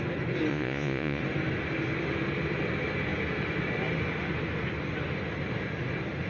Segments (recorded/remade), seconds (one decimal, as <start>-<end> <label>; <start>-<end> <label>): 0.0-0.5 recorded; 0.5-1.2 remade; 1.2-6.3 recorded